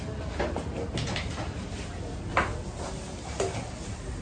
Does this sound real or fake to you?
real